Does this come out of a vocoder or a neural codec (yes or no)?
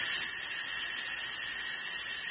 no